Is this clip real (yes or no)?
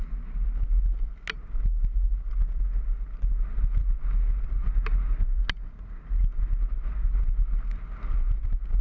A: yes